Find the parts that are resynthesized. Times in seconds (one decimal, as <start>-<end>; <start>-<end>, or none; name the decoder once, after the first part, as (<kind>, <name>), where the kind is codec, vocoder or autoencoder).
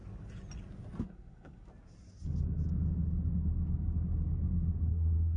1.0-1.7 (codec, SNAC); 4.9-5.4